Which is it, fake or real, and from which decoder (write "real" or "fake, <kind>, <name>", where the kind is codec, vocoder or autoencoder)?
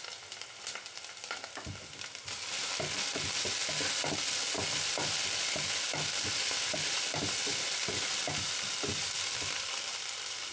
real